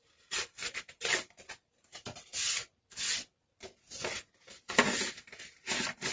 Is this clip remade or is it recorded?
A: recorded